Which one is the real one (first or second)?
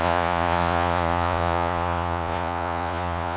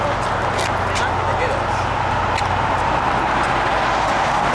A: second